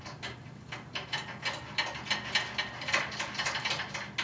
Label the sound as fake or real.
real